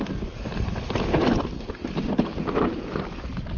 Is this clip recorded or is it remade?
recorded